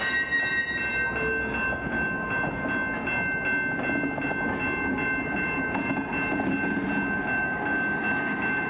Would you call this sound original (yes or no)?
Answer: yes